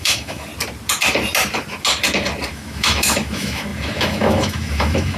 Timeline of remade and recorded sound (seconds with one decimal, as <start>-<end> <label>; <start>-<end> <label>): 0.0-0.5 remade; 0.5-2.5 recorded; 2.5-5.2 remade